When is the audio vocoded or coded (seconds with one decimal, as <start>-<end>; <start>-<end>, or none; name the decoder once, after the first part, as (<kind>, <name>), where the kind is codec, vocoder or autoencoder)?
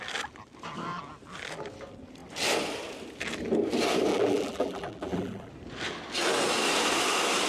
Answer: 4.1-5.5 (vocoder, BigVGAN v2)